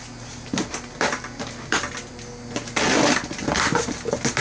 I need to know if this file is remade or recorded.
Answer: recorded